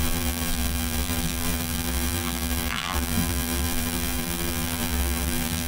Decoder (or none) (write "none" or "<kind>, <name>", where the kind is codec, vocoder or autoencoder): vocoder, BigVGAN v2